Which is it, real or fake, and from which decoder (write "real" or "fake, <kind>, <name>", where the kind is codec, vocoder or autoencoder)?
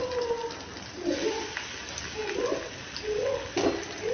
real